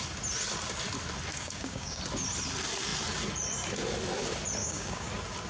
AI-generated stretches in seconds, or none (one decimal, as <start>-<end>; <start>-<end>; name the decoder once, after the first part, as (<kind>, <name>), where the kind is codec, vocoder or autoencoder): 1.3-2.0 (codec, DAC); 4.6-5.1